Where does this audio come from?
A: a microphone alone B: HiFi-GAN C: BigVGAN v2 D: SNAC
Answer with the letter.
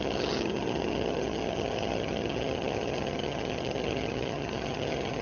B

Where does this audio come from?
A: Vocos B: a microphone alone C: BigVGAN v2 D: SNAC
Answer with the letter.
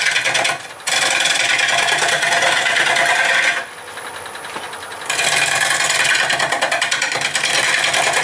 B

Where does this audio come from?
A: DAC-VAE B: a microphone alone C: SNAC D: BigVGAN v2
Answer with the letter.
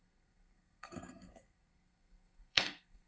C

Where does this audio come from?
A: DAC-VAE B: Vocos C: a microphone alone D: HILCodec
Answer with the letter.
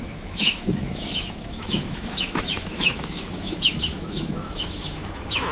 A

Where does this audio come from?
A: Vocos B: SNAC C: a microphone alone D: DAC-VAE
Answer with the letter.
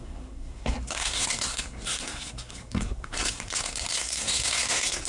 B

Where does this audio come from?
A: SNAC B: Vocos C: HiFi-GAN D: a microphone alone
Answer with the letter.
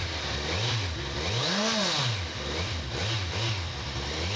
D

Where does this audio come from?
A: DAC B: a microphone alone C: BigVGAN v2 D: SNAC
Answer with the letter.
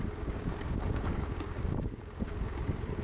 A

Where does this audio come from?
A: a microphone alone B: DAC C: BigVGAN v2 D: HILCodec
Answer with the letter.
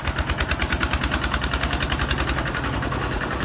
A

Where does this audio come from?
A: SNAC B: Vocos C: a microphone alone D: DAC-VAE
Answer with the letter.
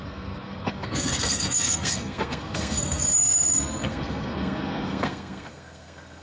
A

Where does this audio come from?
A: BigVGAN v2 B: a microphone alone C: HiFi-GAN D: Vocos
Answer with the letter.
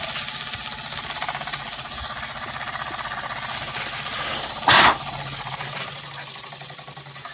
B